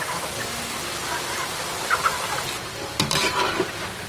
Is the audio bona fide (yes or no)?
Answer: yes